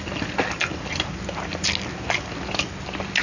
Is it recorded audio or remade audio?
recorded